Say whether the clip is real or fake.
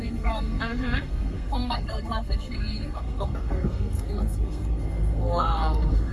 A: fake